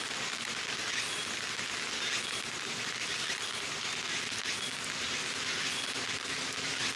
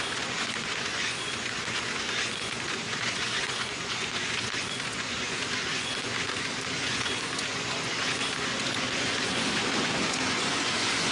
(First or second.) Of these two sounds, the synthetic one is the second